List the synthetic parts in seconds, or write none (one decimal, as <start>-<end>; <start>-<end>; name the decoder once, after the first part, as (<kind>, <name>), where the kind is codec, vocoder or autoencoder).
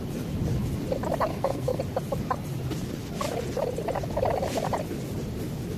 1.3-1.8 (codec, SNAC)